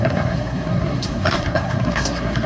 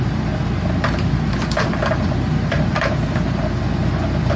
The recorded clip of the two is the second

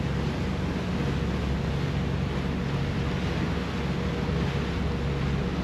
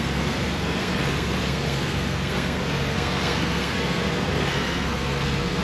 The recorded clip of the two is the first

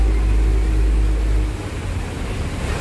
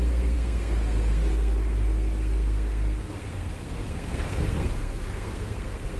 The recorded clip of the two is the first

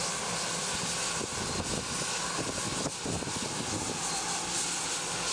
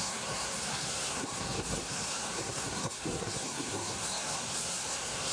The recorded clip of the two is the first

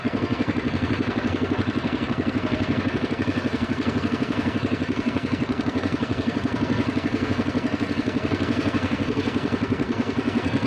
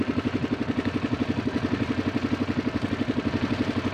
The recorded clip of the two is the second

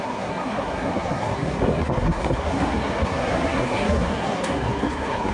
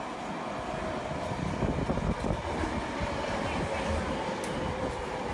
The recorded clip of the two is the second